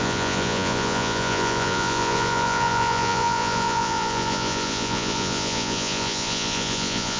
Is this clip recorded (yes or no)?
no